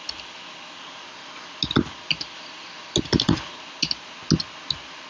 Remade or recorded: recorded